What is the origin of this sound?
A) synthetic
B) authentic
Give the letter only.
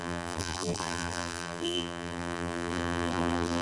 A